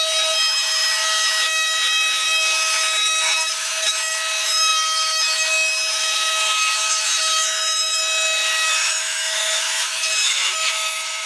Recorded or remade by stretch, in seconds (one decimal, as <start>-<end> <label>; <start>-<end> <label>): 0.0-11.3 remade